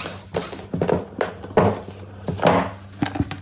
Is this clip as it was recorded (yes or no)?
yes